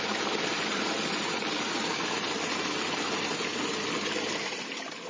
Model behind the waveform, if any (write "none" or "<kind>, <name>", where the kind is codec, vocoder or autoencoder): none